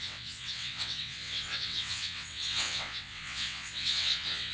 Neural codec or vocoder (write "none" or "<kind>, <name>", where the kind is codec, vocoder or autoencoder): vocoder, WaveNeXt